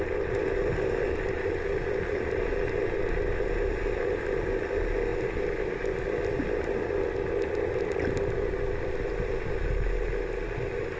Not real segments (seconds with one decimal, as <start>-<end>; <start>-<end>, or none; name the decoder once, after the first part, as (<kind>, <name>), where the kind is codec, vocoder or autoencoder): none